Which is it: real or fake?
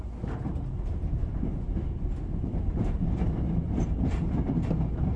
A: real